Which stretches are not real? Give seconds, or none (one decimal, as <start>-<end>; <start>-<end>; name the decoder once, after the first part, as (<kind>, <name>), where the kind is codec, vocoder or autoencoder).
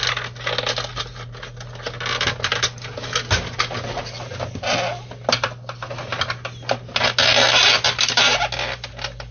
none